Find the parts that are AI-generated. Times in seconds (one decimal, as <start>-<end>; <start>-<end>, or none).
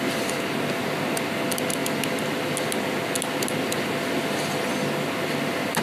none